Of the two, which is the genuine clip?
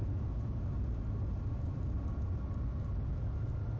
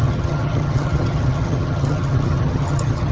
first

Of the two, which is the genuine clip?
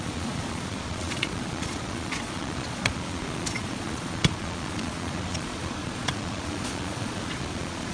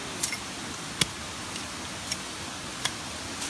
second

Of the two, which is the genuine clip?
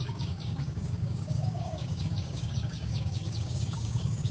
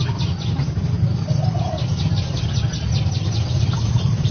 second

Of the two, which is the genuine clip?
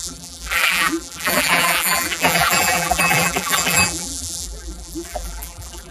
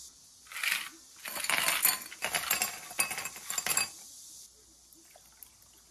second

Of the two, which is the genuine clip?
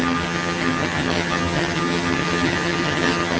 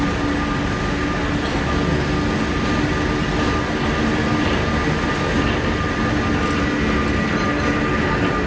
second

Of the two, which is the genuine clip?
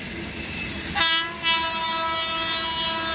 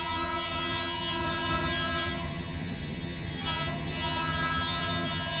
first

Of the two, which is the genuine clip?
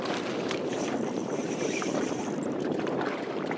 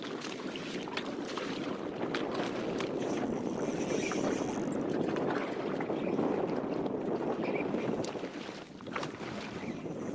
second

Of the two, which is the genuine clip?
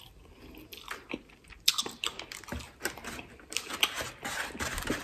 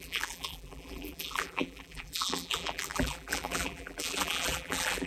first